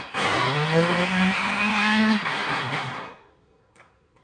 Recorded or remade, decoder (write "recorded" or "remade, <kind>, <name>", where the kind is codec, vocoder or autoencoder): remade, codec, SNAC